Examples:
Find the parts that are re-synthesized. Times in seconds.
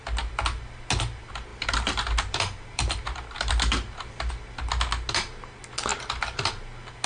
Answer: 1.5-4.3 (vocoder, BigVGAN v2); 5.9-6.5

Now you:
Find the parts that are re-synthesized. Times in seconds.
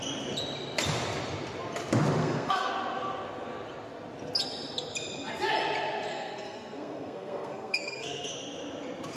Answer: 2.2-2.7 (codec, SNAC); 6.1-8.3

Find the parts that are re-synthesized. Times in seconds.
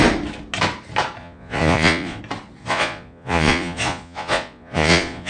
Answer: 1.2-2.2 (vocoder, Vocos); 2.6-5.3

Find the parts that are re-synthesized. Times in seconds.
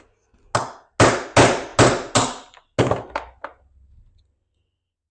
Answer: none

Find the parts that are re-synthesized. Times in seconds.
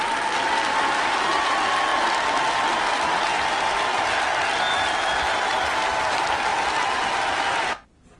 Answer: none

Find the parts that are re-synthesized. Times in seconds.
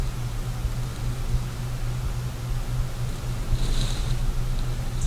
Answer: 0.0-0.6 (vocoder, BigVGAN v2); 3.1-4.2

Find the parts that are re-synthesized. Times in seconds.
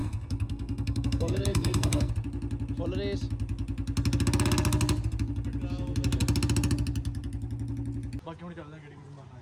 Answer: 0.0-2.1 (codec, SNAC)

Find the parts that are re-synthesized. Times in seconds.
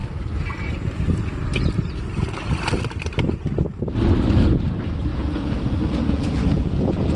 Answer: 5.1-7.2 (vocoder, Vocos)